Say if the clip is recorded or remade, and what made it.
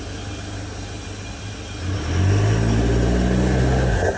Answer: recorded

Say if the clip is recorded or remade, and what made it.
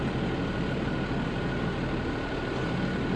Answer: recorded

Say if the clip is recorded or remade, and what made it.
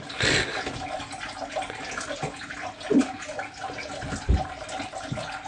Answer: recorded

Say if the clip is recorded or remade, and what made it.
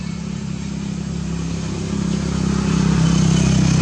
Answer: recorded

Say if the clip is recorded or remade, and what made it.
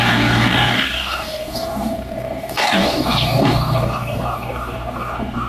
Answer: remade, codec, DAC